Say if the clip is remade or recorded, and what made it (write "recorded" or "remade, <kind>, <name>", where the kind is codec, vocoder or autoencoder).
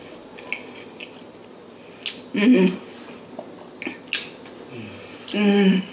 recorded